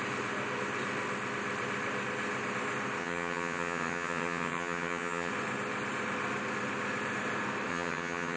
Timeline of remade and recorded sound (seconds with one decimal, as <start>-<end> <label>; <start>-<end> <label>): 0.0-3.0 recorded; 3.0-5.3 remade; 5.3-7.7 recorded; 7.7-8.4 remade